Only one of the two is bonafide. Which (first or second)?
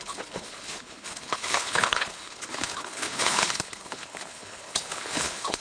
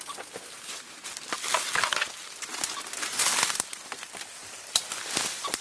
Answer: second